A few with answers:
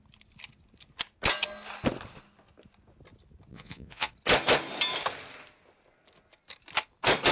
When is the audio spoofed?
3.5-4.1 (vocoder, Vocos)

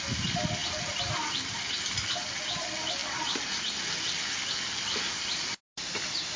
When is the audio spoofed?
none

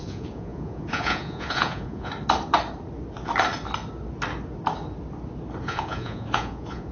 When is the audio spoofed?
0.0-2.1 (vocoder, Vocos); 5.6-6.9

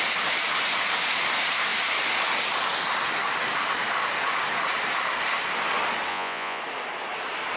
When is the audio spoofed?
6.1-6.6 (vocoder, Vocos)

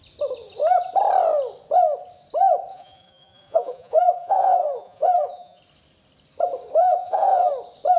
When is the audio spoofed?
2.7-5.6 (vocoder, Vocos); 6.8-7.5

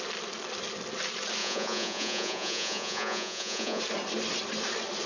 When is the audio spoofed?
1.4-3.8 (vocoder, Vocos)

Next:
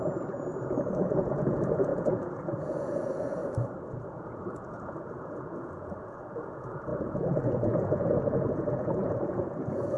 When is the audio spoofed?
0.0-3.4 (vocoder, Vocos); 3.9-10.0